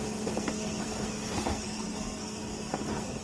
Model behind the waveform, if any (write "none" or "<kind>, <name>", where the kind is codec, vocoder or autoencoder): codec, SNAC